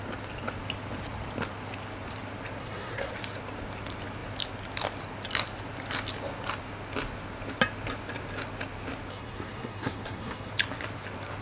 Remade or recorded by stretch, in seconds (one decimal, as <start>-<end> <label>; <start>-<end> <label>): 0.0-2.6 recorded; 2.6-3.1 remade; 3.1-9.1 recorded; 9.1-10.5 remade; 10.5-11.4 recorded